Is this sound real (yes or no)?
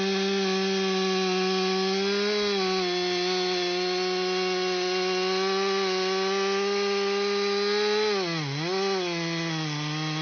yes